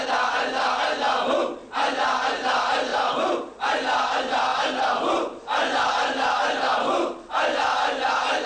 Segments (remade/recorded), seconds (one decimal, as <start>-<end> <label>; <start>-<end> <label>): 0.0-2.9 recorded; 2.9-3.5 remade; 3.5-8.5 recorded